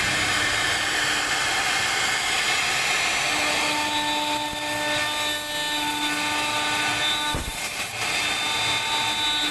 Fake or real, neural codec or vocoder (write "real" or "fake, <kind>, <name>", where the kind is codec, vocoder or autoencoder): real